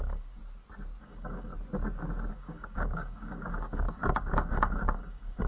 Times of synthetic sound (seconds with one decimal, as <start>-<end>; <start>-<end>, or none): 0.0-0.4; 1.0-1.5; 2.3-5.5